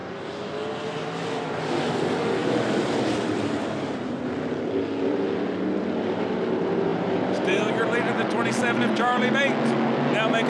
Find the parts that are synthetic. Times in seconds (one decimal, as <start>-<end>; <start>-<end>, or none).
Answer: 2.4-4.3; 6.9-7.7

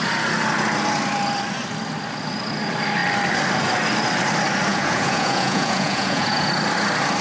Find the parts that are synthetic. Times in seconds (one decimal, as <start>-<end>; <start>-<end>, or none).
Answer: 4.7-6.5